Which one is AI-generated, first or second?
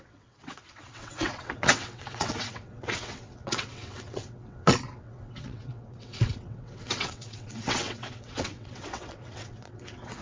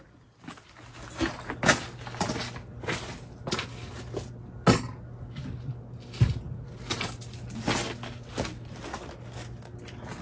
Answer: first